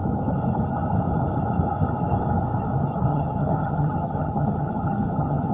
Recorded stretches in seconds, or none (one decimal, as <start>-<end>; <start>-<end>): 0.0-3.1